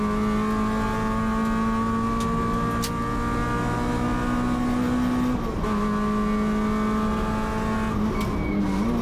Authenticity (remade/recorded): recorded